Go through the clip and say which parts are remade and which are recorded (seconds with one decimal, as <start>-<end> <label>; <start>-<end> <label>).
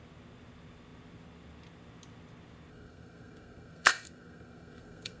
0.0-2.7 recorded; 2.7-5.2 remade